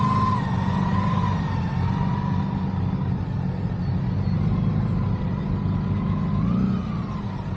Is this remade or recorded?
recorded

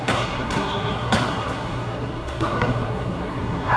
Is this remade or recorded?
remade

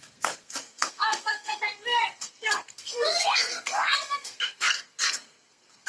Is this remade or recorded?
remade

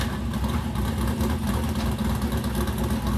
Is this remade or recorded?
recorded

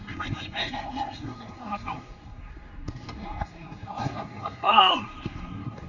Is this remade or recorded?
remade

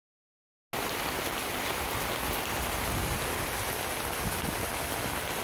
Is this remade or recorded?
recorded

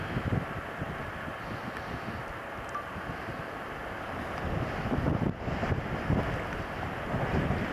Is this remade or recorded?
recorded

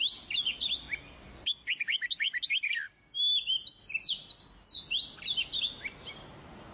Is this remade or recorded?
recorded